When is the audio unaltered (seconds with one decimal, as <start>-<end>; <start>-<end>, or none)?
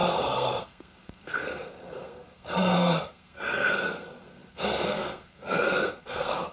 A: none